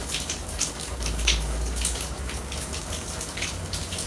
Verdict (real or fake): fake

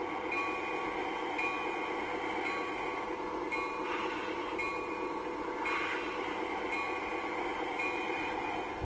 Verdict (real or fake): real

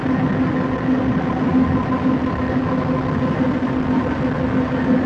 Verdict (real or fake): real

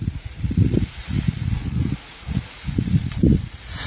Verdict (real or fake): fake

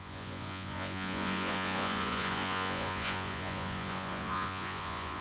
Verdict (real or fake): fake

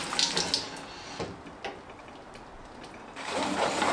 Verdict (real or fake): real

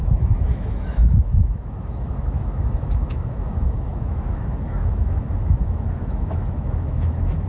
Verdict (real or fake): fake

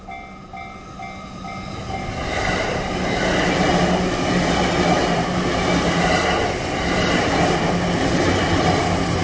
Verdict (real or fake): real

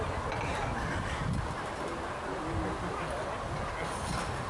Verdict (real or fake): real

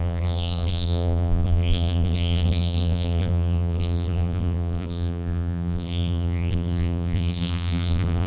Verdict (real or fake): fake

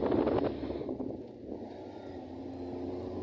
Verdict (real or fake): real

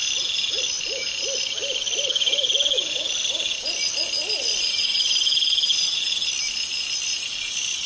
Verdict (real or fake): real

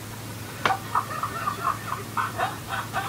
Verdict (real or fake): fake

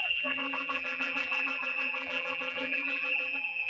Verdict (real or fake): fake